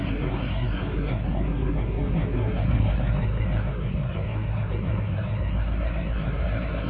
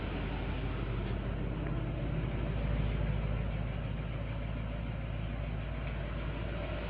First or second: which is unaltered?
second